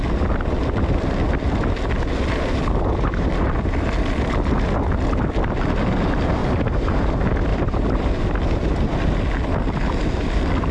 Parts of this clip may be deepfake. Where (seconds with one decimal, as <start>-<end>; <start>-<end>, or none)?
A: 6.4-7.1; 7.5-8.1